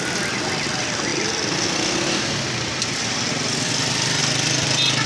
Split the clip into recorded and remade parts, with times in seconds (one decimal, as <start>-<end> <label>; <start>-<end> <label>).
0.0-5.1 recorded